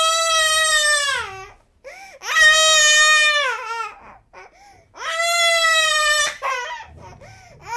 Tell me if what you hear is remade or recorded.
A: recorded